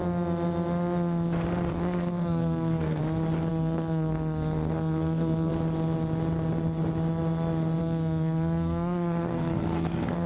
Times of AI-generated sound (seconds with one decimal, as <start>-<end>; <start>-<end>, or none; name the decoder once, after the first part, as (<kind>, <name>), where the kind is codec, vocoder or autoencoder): 1.7-3.0 (codec, SNAC); 3.5-5.5; 7.8-10.3